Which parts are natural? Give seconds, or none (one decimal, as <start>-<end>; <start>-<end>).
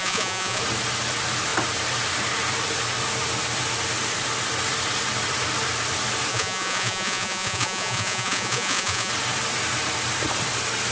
0.6-6.3; 9.1-10.9